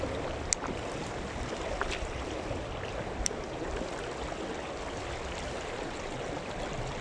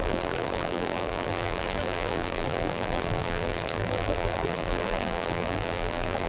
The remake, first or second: second